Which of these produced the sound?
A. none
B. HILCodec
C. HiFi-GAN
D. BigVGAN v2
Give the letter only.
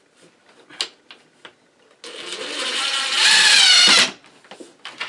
A